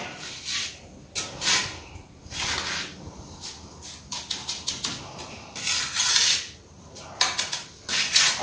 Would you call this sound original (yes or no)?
yes